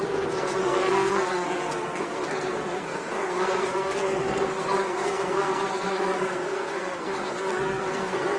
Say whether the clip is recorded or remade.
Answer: remade